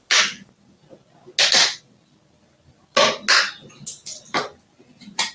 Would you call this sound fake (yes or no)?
no